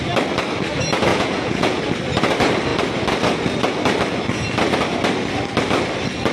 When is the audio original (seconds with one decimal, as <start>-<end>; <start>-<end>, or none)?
0.0-1.1; 1.8-6.3